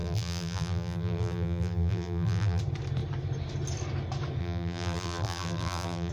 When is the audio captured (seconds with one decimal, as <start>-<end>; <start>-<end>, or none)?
2.6-4.4